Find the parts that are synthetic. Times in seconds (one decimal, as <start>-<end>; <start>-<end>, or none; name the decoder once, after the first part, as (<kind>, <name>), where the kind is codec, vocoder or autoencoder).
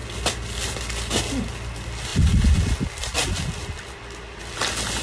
none